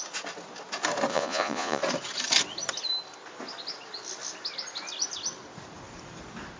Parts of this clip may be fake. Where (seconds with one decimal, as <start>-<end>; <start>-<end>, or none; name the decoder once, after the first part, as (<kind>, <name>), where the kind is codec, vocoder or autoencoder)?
1.1-1.8 (vocoder, Vocos)